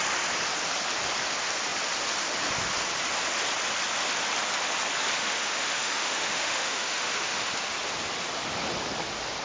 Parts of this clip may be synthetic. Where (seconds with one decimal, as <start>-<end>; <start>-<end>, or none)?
5.2-7.5